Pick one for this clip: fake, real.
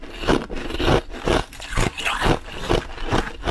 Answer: real